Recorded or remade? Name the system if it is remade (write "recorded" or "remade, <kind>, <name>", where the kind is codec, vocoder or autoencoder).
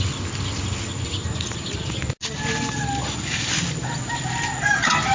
recorded